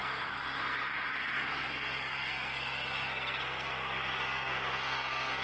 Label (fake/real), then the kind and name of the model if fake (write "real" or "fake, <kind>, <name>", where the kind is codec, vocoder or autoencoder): fake, codec, SNAC